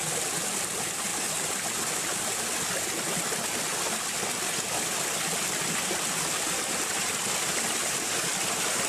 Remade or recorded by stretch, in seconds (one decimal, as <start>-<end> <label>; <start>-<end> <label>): 0.0-8.9 recorded